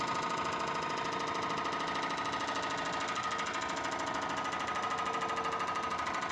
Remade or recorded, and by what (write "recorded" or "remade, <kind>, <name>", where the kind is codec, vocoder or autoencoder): recorded